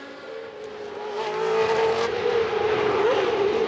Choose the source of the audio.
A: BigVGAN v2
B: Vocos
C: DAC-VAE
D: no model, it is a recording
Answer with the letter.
D